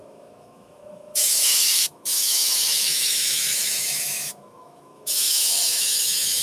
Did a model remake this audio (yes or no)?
yes